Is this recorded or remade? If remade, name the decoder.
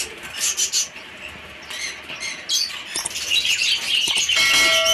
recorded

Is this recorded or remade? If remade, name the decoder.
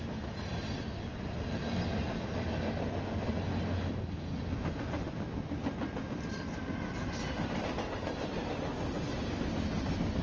recorded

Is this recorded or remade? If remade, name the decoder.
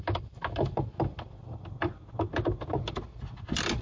recorded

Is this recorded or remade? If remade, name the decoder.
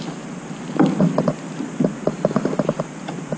recorded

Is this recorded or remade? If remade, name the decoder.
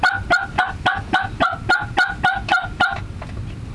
recorded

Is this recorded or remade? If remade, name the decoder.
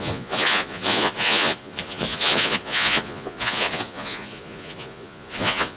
remade, vocoder, Vocos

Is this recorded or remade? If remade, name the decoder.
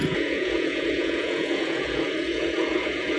remade, vocoder, Vocos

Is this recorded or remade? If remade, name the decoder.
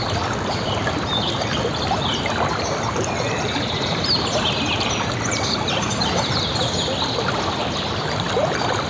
recorded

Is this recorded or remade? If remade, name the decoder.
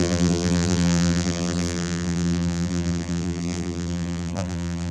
remade, vocoder, BigVGAN v2